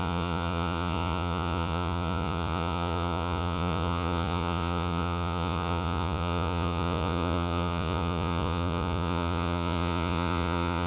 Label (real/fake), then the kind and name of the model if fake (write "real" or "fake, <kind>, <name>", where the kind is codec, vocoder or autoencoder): fake, vocoder, Vocos